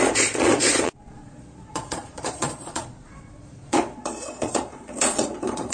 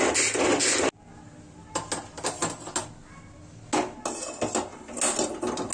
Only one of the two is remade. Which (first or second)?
first